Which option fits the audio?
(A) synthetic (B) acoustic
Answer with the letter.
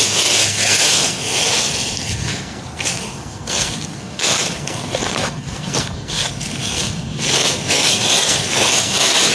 A